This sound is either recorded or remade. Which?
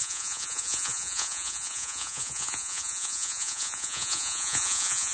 remade